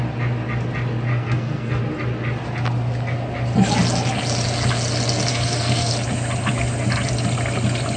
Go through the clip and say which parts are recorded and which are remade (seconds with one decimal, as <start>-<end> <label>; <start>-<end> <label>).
0.0-1.1 recorded; 1.1-1.8 remade; 1.8-5.3 recorded; 5.3-5.9 remade; 5.9-8.0 recorded